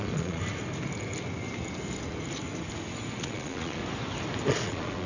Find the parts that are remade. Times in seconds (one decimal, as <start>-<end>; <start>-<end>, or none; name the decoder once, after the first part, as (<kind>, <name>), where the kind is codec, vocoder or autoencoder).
0.0-0.4 (vocoder, Vocos); 3.2-3.8; 4.5-5.1